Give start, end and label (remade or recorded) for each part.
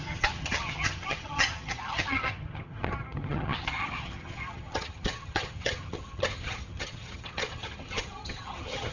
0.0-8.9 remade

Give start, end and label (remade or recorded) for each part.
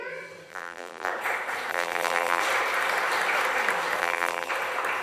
0.0-0.5 recorded; 0.5-1.1 remade; 1.1-1.7 recorded; 1.7-2.4 remade; 2.4-4.0 recorded; 4.0-4.5 remade; 4.5-5.0 recorded